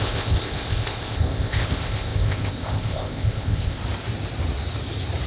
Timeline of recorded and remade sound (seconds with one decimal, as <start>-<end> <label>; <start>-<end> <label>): 0.0-3.8 remade; 3.8-5.3 recorded